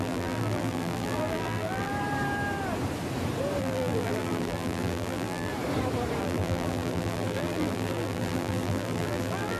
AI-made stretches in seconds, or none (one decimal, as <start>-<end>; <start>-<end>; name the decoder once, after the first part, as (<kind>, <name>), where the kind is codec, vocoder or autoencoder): 0.0-1.9 (vocoder, BigVGAN v2); 3.6-5.5; 6.2-9.6